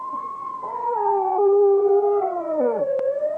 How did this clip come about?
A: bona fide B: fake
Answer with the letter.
B